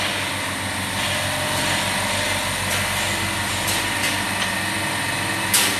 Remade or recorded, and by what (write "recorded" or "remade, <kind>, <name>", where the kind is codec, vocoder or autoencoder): recorded